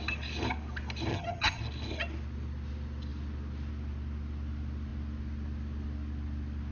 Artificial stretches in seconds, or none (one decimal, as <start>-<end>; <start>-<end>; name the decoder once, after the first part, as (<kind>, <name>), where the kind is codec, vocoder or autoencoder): 1.1-1.6 (vocoder, HiFi-GAN)